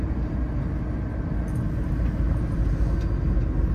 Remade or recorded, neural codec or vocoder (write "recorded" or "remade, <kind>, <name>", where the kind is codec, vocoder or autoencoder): recorded